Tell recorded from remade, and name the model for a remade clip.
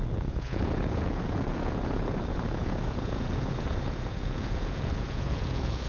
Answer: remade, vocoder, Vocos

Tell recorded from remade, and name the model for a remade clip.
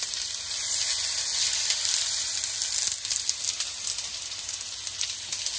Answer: recorded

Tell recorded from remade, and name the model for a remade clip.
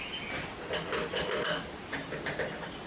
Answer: recorded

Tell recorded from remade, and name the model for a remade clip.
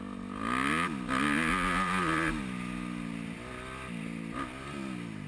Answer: recorded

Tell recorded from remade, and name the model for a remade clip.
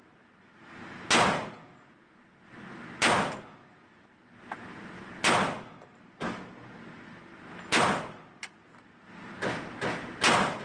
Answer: recorded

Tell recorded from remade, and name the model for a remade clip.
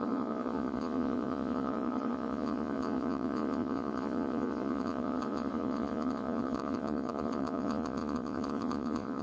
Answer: remade, vocoder, Vocos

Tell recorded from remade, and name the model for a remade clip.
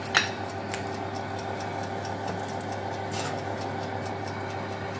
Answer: recorded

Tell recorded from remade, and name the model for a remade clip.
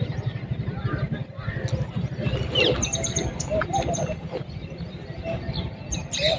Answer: recorded